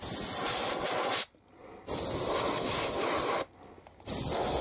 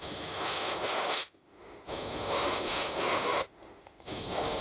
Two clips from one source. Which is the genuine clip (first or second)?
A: first